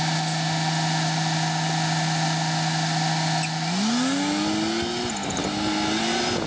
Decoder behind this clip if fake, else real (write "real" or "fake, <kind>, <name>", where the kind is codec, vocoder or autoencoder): real